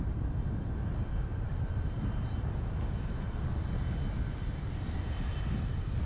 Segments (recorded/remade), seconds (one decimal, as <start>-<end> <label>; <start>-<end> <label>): 0.0-1.3 recorded; 1.3-2.8 remade; 2.8-6.0 recorded